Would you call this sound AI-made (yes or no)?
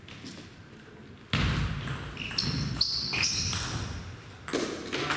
no